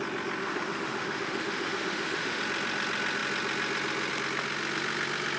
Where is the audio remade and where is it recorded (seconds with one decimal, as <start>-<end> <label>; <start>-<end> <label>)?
0.0-0.4 recorded; 0.4-2.4 remade; 2.4-5.4 recorded

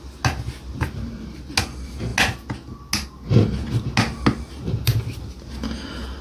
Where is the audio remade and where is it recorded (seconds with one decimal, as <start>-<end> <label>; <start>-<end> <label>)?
0.0-6.2 recorded

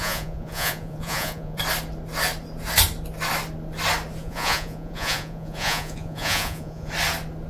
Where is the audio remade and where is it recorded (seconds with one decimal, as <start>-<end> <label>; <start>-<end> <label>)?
0.0-1.6 remade; 1.6-4.2 recorded; 4.2-6.9 remade; 6.9-7.5 recorded

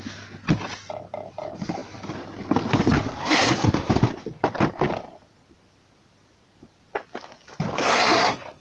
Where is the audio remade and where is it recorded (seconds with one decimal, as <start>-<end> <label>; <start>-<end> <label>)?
0.0-3.2 recorded; 3.2-3.9 remade; 3.9-7.8 recorded; 7.8-8.6 remade

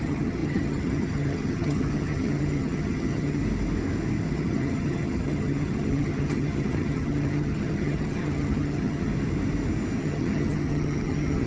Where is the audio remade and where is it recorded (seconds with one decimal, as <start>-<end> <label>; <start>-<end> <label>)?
0.0-3.4 remade; 3.4-4.3 recorded; 4.3-9.1 remade; 9.1-10.0 recorded; 10.0-11.5 remade

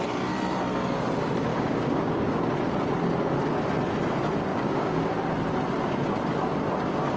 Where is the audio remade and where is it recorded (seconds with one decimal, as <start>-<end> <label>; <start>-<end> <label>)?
0.0-1.5 recorded; 1.5-2.5 remade; 2.5-4.5 recorded; 4.5-5.1 remade; 5.1-7.2 recorded